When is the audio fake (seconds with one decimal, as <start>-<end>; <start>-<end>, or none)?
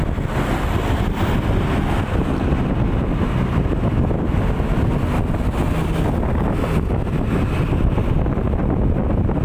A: none